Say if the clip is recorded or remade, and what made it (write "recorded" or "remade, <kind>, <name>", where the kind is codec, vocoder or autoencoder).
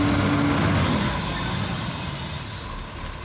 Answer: recorded